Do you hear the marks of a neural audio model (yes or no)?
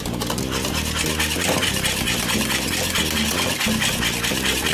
no